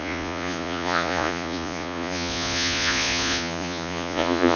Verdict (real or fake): fake